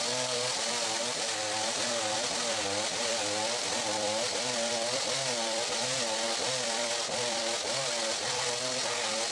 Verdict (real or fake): fake